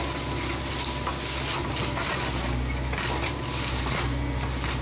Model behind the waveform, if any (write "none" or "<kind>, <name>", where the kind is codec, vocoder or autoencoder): none